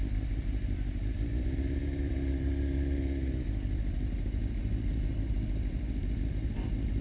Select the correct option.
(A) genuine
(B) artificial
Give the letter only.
A